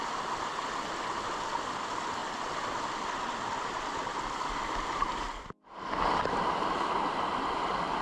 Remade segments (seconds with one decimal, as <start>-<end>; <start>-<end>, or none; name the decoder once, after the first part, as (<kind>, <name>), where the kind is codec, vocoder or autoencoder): none

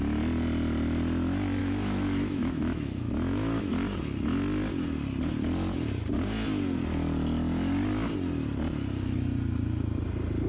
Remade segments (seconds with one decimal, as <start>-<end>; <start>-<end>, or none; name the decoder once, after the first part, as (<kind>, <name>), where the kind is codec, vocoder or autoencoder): 1.6-3.7 (autoencoder, DAC-VAE)

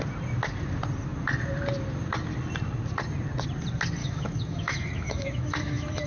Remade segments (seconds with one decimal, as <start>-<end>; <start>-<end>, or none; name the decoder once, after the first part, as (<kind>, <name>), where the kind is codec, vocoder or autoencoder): 4.0-6.1 (autoencoder, DAC-VAE)

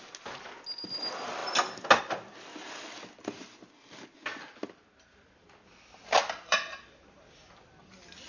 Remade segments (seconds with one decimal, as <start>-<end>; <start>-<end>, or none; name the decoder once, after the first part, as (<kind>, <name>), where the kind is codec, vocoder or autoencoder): none

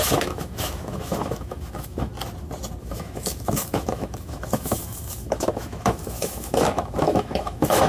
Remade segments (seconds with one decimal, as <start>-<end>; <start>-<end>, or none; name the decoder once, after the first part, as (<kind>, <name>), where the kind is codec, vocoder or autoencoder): 0.0-2.1 (autoencoder, DAC-VAE); 2.8-7.9

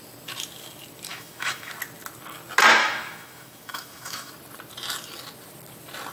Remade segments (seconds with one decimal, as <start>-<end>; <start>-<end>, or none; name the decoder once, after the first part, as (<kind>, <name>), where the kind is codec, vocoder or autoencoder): 1.1-1.7 (autoencoder, DAC-VAE); 2.8-4.3